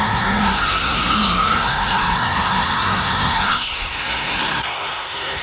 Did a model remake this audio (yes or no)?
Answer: yes